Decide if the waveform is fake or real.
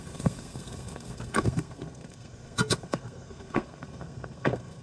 fake